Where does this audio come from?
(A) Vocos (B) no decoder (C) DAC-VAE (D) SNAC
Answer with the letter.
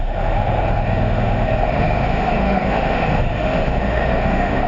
C